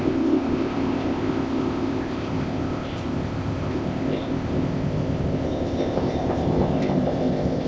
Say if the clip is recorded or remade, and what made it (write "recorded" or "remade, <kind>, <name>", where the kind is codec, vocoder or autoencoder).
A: remade, codec, ZipCodec